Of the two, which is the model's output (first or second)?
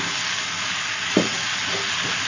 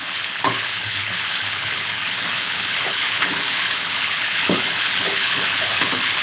second